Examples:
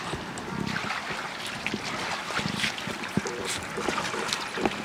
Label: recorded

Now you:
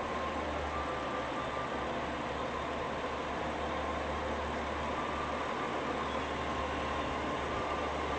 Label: recorded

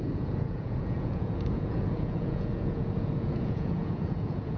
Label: remade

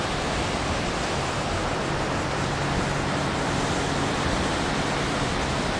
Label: recorded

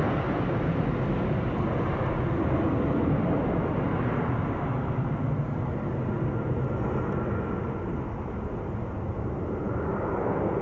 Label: recorded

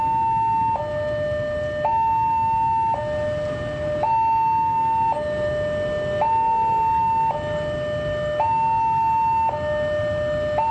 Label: recorded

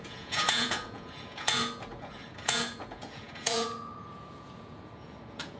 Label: remade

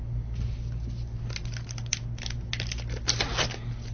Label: recorded